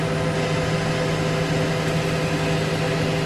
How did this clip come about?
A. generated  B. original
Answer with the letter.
B